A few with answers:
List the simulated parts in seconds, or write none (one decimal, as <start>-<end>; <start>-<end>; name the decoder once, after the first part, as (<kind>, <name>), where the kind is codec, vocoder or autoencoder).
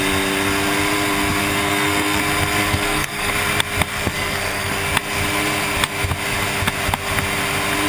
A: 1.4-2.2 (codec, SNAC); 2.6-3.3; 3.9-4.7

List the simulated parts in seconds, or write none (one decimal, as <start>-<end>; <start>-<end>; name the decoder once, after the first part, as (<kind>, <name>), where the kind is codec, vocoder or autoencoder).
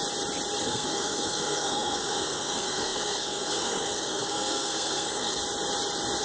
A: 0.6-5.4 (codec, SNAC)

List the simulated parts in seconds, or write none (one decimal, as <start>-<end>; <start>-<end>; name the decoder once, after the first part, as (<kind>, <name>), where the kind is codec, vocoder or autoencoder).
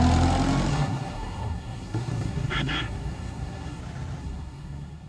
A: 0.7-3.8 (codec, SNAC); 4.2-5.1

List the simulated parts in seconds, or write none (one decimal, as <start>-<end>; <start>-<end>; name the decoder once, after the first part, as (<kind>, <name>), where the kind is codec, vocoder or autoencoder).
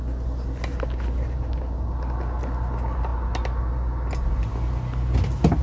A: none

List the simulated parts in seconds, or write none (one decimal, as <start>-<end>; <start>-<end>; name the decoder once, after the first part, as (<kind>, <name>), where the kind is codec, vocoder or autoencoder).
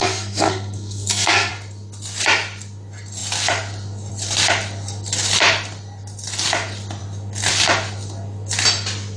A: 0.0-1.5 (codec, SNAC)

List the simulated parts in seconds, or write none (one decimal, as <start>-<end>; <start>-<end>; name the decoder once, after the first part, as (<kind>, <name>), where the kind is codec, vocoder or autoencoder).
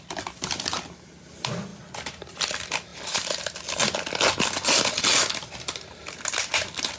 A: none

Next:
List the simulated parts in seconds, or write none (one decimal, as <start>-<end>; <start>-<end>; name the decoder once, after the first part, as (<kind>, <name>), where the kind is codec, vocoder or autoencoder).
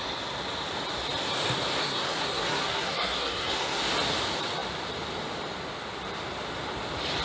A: 1.8-3.8 (codec, SNAC)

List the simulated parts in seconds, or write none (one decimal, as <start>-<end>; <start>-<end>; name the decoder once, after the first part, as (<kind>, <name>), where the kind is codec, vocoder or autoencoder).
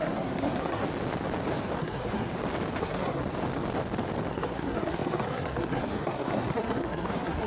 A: 0.0-0.8 (codec, SNAC); 1.8-2.3; 2.8-3.2; 4.3-7.5